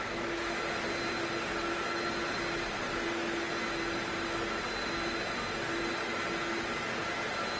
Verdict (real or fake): real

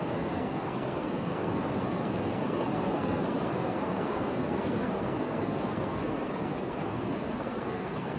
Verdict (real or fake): fake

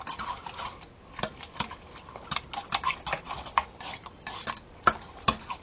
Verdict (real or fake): real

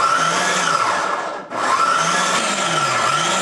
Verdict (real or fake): real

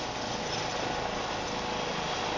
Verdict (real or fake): real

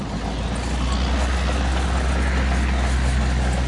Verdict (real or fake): real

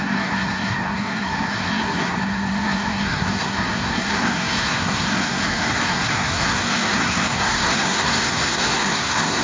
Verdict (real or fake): fake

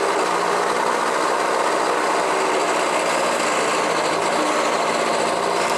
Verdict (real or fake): real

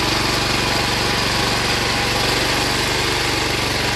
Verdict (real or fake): real